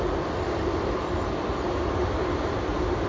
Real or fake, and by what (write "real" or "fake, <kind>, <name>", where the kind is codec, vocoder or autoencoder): real